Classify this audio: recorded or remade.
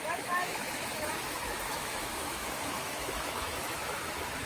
remade